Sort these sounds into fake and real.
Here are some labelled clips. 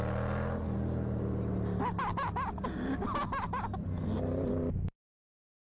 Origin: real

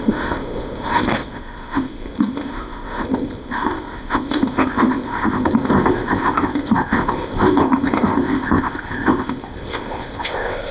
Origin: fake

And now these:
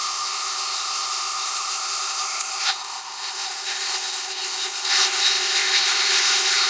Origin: fake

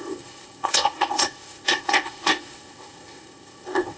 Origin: fake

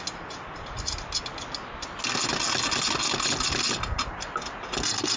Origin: real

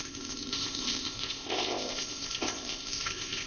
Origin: fake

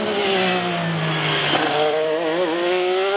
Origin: real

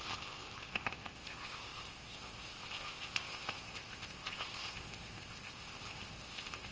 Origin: fake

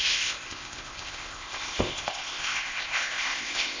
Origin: fake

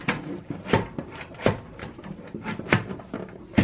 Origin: real